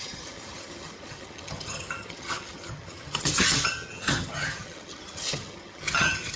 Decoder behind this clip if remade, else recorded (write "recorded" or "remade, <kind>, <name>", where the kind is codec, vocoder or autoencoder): remade, vocoder, HiFi-GAN